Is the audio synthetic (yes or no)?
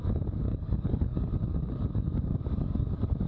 yes